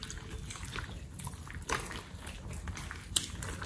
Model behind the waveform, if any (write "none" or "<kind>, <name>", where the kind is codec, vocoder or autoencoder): none